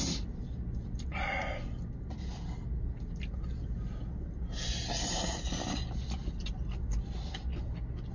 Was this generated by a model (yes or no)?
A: no